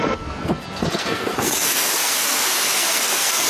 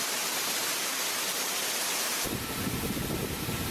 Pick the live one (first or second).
second